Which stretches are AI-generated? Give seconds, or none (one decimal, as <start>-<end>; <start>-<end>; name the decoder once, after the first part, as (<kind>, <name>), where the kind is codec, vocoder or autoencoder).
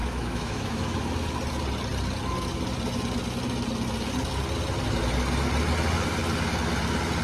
0.0-1.0 (autoencoder, DAC-VAE)